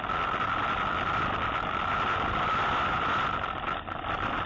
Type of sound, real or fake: real